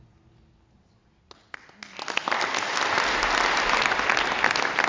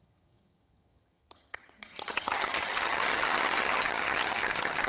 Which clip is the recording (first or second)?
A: first